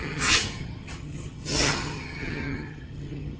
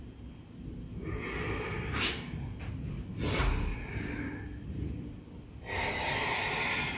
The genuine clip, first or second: second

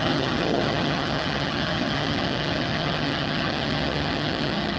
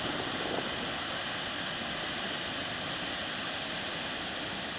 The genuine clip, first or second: second